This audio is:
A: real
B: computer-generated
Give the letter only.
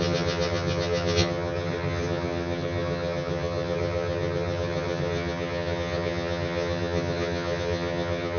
B